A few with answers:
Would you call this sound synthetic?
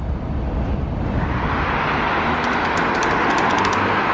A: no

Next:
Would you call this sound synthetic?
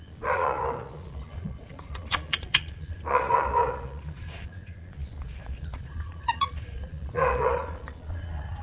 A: yes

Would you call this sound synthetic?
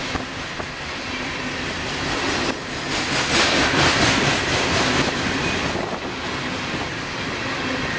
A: no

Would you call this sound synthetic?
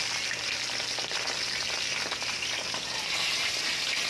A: no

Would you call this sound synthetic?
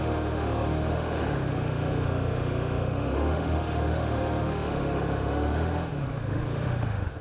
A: yes